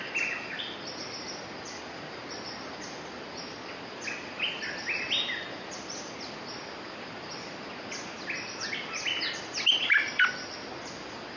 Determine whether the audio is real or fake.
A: real